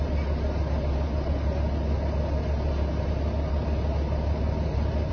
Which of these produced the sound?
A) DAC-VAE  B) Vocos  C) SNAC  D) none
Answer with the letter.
D